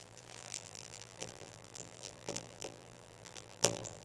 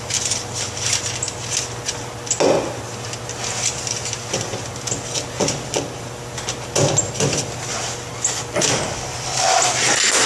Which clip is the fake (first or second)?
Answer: first